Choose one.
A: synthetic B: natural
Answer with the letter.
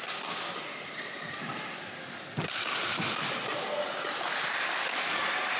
B